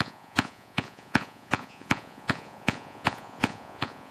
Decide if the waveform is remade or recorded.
remade